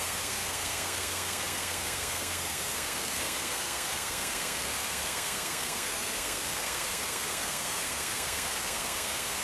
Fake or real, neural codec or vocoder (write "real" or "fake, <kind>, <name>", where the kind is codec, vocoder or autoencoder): fake, codec, SNAC